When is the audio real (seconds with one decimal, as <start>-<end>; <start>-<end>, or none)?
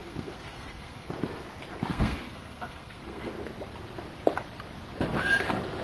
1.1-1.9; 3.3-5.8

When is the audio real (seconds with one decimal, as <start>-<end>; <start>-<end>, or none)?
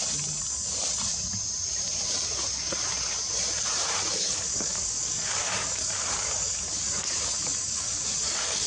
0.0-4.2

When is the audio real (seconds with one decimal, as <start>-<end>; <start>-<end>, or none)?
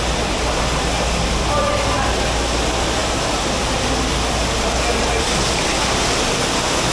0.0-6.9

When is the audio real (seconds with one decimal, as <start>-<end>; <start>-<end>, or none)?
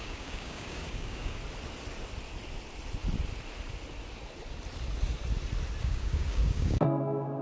1.4-5.8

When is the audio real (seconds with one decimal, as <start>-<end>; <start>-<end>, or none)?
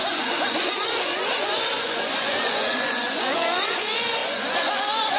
none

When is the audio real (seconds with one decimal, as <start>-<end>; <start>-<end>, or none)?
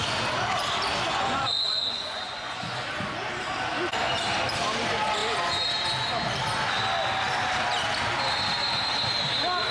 0.0-1.1; 2.9-9.7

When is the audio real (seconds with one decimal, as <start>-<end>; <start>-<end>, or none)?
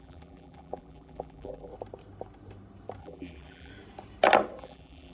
1.7-3.0; 3.7-4.6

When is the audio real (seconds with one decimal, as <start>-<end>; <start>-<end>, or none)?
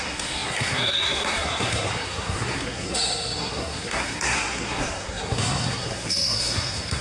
none